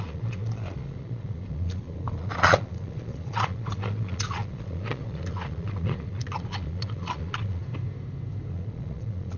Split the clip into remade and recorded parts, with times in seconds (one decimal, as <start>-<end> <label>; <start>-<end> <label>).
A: 0.0-7.6 remade; 7.6-8.5 recorded; 8.5-9.4 remade